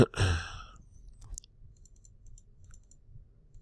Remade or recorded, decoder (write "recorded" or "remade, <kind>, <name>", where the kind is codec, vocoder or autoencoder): recorded